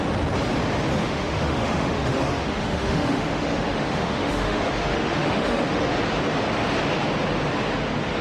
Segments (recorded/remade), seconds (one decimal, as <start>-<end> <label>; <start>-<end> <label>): 0.0-1.0 recorded; 1.0-5.9 remade; 5.9-8.2 recorded